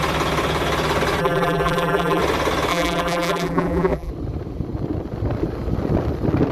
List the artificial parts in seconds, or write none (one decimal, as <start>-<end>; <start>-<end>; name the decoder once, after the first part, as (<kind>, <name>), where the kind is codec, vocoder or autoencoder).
1.2-2.2 (vocoder, BigVGAN v2); 2.7-4.1